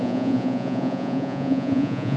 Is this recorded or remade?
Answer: remade